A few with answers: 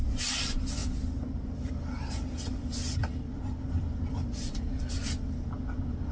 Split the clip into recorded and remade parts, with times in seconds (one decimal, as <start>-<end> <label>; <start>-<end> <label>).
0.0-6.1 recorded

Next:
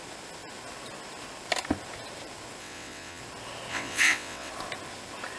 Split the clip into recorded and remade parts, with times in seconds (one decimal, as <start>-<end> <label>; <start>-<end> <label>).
0.0-2.6 recorded; 2.6-3.2 remade; 3.2-3.7 recorded; 3.7-4.5 remade; 4.5-5.4 recorded

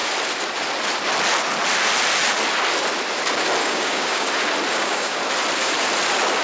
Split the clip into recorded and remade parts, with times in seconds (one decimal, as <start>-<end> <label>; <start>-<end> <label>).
0.0-3.6 recorded; 3.6-4.3 remade; 4.3-4.7 recorded; 4.7-5.2 remade; 5.2-6.4 recorded

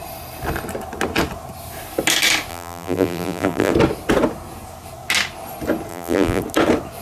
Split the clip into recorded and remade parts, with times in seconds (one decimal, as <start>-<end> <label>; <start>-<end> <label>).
0.0-2.5 recorded; 2.5-3.7 remade; 3.7-5.9 recorded; 5.9-6.4 remade; 6.4-7.0 recorded

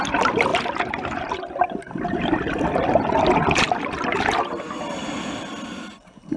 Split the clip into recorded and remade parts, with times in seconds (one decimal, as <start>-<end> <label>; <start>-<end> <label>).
0.0-6.4 recorded

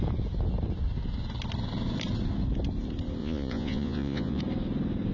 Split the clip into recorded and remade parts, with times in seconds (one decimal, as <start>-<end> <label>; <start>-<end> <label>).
0.0-3.2 recorded; 3.2-4.4 remade; 4.4-5.1 recorded

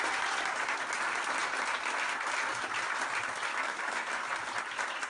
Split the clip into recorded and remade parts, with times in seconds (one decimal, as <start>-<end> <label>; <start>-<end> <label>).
0.0-3.5 recorded; 3.5-4.1 remade; 4.1-5.1 recorded

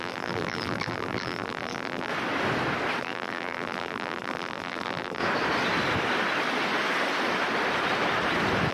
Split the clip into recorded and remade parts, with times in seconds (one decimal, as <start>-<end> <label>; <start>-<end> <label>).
0.0-2.1 remade; 2.1-3.0 recorded; 3.0-5.2 remade; 5.2-8.7 recorded